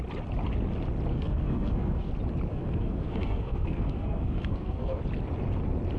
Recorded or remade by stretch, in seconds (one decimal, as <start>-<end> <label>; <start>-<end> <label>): 0.0-1.1 recorded; 1.1-2.1 remade; 2.1-2.5 recorded; 2.5-5.0 remade; 5.0-6.0 recorded